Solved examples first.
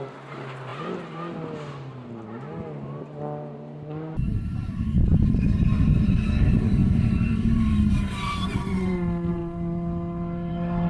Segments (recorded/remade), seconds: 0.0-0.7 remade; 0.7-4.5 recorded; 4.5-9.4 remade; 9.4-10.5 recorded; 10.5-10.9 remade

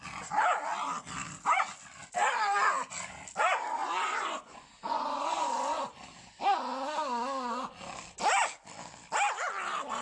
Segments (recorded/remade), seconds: 0.0-3.8 recorded; 3.8-5.5 remade; 5.5-10.0 recorded

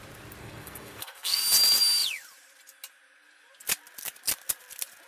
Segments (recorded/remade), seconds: 0.0-0.4 recorded; 0.4-1.4 remade; 1.4-5.1 recorded

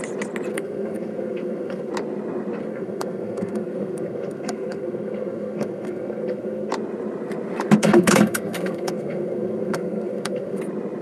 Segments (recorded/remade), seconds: 0.0-0.5 recorded; 0.5-1.9 remade; 1.9-2.6 recorded; 2.6-6.7 remade; 6.7-7.8 recorded; 7.8-10.6 remade; 10.6-11.0 recorded

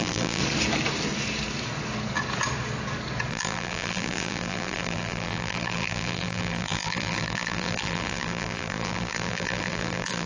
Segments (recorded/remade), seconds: 0.0-0.4 remade; 0.4-3.3 recorded; 3.3-10.3 remade